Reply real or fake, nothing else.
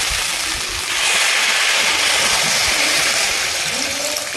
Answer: real